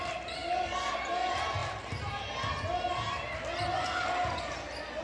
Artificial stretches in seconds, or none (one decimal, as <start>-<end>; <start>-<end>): none